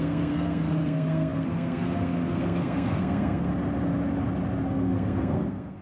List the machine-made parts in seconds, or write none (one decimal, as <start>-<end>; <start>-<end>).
0.0-3.5; 4.7-5.8